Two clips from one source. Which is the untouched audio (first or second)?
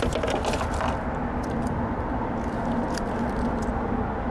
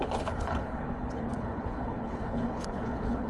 first